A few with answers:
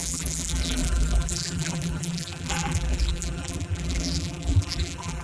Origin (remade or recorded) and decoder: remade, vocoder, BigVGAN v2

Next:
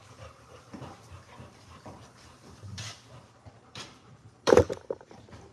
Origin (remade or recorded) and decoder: remade, vocoder, BigVGAN v2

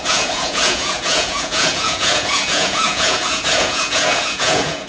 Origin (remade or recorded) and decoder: remade, vocoder, Vocos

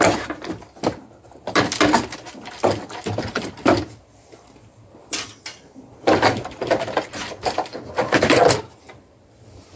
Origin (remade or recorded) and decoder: recorded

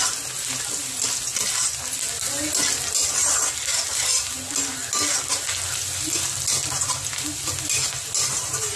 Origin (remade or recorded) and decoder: recorded